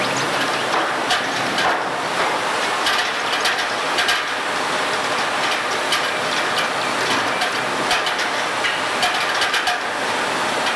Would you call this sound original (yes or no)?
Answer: yes